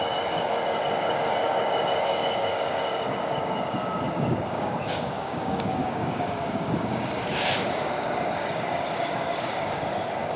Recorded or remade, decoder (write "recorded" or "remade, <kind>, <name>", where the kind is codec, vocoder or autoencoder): remade, codec, DAC